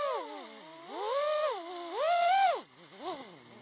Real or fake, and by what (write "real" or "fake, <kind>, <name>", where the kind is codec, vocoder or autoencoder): real